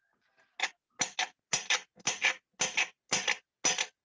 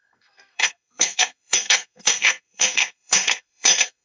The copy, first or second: second